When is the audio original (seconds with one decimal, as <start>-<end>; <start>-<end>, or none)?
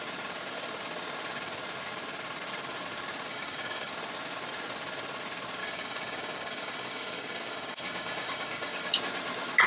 0.0-3.3; 3.9-5.6; 8.9-9.7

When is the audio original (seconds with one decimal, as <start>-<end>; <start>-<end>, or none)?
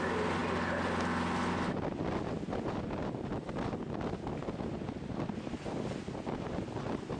0.4-4.7